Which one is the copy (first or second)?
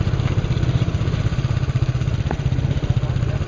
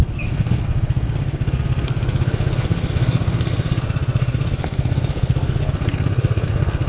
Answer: second